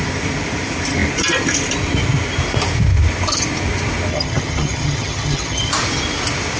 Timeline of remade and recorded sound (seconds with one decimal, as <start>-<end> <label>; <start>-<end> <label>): 0.0-4.1 recorded; 4.1-5.7 remade; 5.7-6.6 recorded